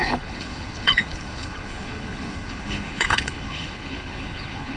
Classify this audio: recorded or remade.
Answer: remade